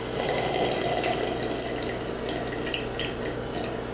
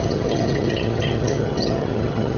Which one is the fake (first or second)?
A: second